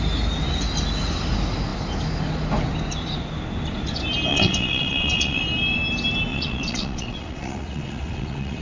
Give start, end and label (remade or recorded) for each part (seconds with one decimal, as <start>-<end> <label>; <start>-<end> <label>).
0.0-4.3 recorded; 4.3-5.4 remade; 5.4-6.3 recorded; 6.3-8.6 remade